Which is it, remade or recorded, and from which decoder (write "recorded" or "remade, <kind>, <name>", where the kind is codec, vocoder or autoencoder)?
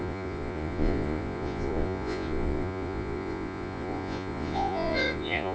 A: remade, vocoder, Vocos